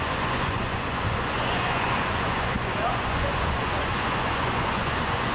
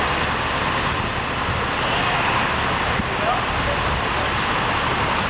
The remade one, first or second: first